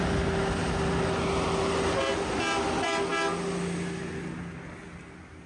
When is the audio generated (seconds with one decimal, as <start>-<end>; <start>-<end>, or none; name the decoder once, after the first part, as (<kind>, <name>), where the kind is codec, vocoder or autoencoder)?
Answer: none

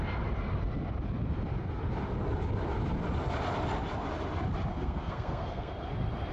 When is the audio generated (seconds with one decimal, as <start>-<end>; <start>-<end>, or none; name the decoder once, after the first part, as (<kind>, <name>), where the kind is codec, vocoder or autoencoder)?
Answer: 4.7-5.7 (codec, SNAC)

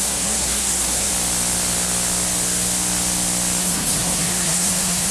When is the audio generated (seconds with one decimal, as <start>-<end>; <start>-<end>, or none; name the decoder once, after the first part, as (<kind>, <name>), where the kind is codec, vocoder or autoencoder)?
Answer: 0.0-1.1 (codec, SNAC); 3.6-5.1

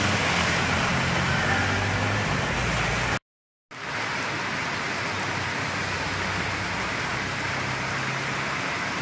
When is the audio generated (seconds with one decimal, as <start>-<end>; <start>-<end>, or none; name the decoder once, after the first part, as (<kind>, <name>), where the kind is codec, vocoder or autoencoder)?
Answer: none

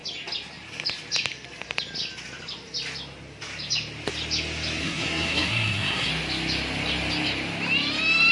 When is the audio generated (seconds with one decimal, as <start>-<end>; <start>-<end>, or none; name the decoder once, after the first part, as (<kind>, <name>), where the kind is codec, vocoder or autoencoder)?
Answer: 4.8-6.1 (codec, SNAC)

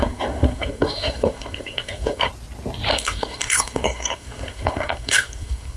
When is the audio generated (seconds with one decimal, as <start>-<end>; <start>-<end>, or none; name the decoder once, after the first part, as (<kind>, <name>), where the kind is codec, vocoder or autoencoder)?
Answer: 0.0-2.3 (codec, SNAC); 2.9-5.8

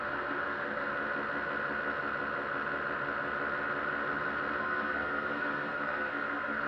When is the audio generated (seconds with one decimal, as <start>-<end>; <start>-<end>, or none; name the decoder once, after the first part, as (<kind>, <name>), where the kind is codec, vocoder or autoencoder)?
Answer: 0.0-0.9 (codec, SNAC); 4.6-6.7

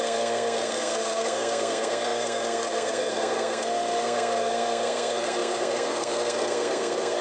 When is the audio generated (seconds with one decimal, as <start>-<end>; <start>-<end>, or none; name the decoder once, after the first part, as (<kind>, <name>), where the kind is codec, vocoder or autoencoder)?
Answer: 0.0-7.2 (codec, SNAC)